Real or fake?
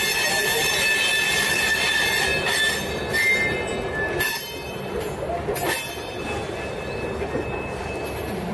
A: real